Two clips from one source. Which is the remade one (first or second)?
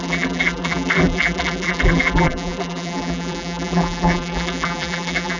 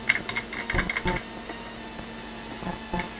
first